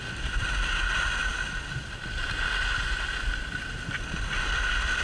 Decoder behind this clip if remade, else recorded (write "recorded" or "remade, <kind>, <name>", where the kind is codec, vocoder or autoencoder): recorded